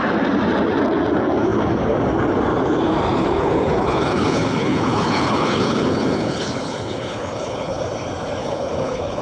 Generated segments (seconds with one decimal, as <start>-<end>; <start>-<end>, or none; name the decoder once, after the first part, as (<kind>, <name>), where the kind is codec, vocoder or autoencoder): 3.2-7.8 (codec, HILCodec); 8.4-9.2